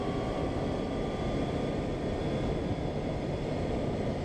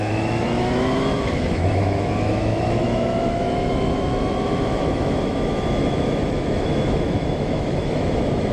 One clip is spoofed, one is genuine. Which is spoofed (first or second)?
second